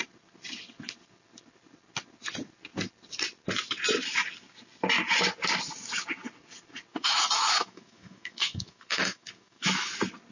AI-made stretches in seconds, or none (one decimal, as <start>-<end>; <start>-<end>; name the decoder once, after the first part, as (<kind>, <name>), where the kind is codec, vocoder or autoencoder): 6.9-9.9 (autoencoder, DAC-VAE)